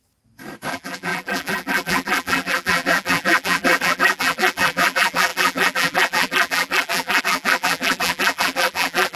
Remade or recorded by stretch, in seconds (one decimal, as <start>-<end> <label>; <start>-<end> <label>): 0.0-0.7 recorded; 0.7-9.2 remade

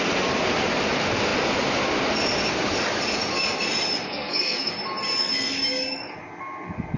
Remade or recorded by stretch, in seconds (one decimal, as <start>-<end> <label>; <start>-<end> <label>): 0.0-4.1 recorded; 4.1-4.7 remade; 4.7-7.0 recorded

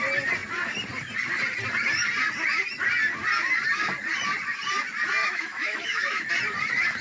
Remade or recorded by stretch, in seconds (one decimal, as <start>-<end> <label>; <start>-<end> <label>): 0.0-5.2 recorded; 5.2-6.3 remade; 6.3-7.0 recorded

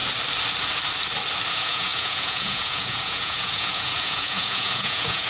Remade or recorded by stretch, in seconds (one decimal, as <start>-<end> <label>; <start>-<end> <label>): 0.0-1.5 recorded; 1.5-5.3 remade

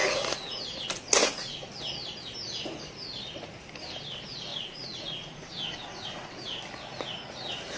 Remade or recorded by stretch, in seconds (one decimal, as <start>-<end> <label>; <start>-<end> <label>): 0.0-0.6 remade; 0.6-1.2 recorded; 1.2-1.7 remade; 1.7-4.5 recorded; 4.5-6.6 remade; 6.6-7.8 recorded